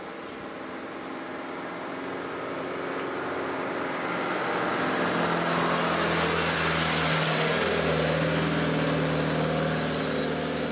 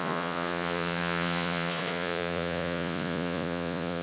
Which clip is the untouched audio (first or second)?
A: first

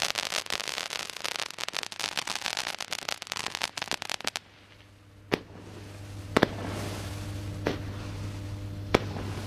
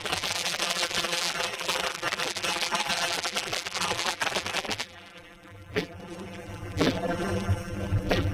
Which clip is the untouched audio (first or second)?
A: first